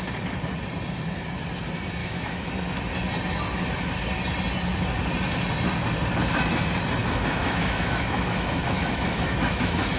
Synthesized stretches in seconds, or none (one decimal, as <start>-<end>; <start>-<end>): 2.0-2.5; 7.0-10.0